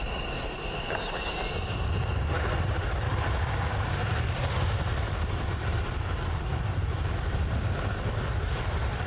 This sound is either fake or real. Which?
fake